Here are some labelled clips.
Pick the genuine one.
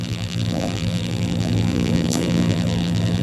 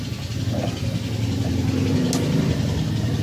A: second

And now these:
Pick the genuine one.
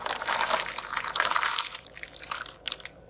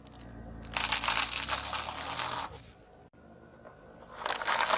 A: second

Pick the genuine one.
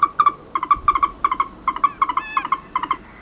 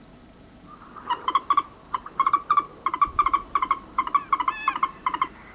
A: first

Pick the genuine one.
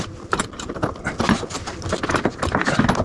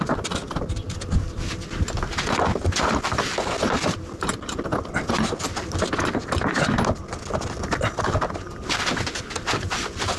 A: second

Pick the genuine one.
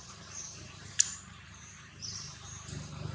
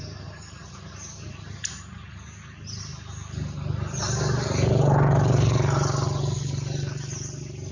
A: second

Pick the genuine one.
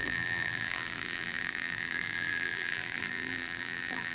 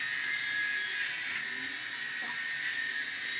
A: second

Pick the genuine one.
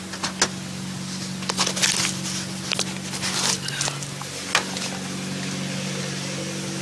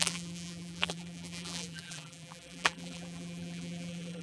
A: first